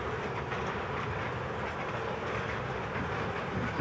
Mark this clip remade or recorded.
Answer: recorded